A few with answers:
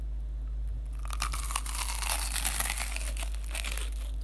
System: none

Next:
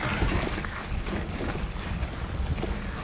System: none